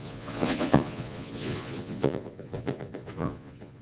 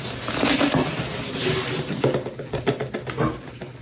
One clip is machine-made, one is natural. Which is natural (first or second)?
second